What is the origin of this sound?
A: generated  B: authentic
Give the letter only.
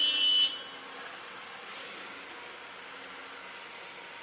B